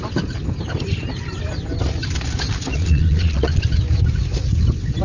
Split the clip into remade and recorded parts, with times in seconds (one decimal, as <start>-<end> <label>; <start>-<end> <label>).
0.0-2.7 recorded; 2.7-3.6 remade; 3.6-5.0 recorded